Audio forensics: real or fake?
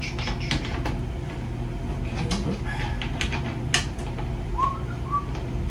real